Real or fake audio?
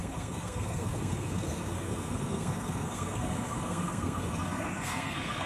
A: fake